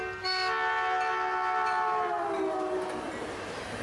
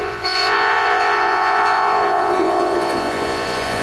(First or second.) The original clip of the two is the first